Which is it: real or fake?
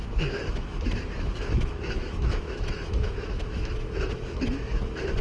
fake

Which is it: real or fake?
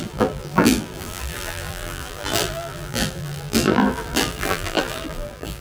fake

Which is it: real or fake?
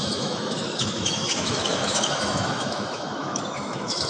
fake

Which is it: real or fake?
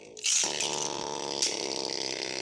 real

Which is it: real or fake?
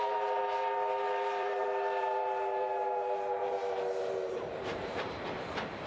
fake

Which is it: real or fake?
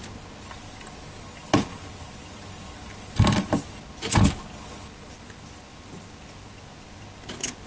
real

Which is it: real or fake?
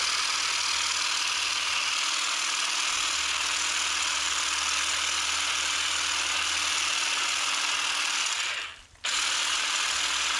real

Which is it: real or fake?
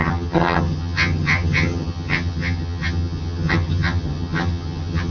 fake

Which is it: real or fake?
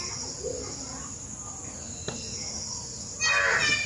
real